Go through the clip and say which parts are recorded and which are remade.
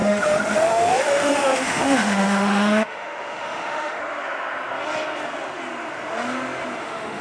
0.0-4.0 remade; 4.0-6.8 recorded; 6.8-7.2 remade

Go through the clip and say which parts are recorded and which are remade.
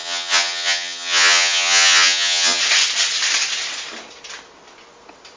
0.0-2.6 remade; 2.6-5.4 recorded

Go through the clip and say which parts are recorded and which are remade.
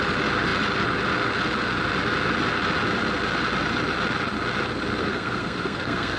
0.0-5.0 recorded; 5.0-6.2 remade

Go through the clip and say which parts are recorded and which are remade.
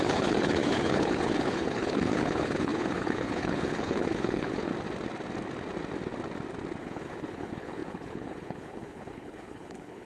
0.0-4.7 remade; 4.7-6.8 recorded; 6.8-10.0 remade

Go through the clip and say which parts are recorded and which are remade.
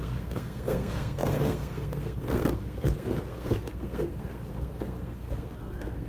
0.0-6.1 remade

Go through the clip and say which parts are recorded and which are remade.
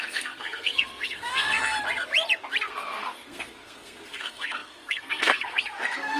0.0-1.6 remade; 1.6-2.6 recorded; 2.6-6.2 remade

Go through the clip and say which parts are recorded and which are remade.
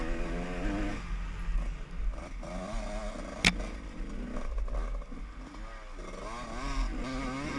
0.0-7.6 recorded